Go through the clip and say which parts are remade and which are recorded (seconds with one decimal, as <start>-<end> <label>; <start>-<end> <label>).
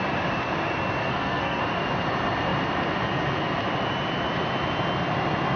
0.0-1.0 recorded; 1.0-1.6 remade; 1.6-5.6 recorded